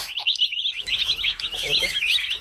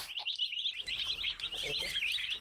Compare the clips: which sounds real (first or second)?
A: second